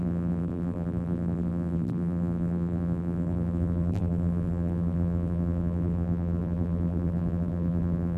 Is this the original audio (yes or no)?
no